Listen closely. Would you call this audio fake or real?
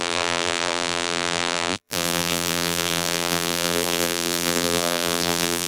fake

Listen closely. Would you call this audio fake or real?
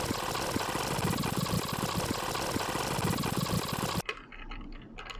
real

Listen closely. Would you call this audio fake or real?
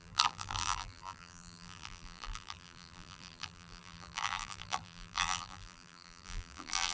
fake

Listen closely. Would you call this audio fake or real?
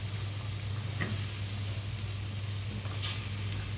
real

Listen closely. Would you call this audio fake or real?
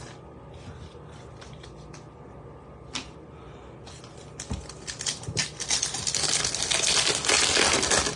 real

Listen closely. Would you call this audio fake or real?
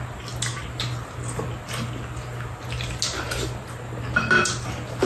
real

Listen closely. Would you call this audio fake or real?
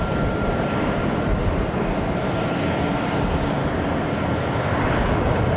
fake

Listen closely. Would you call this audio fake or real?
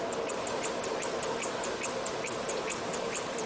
fake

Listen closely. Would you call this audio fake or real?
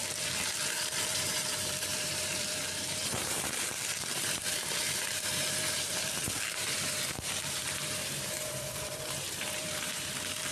fake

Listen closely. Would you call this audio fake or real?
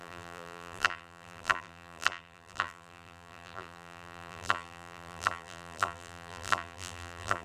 fake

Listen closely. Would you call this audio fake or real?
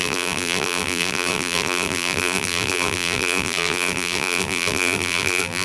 fake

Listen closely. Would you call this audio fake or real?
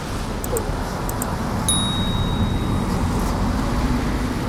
real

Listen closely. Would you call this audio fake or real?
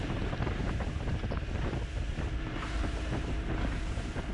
fake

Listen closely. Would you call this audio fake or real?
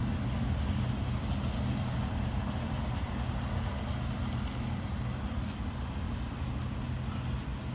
real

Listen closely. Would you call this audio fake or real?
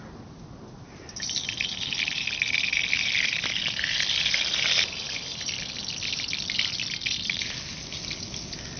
real